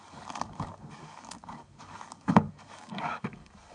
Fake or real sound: fake